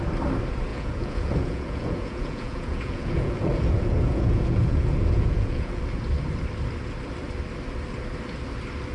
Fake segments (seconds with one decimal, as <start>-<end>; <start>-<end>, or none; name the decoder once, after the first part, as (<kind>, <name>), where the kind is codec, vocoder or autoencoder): 0.7-5.8 (vocoder, Vocos)